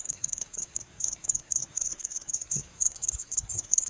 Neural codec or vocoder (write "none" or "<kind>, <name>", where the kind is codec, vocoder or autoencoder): codec, SNAC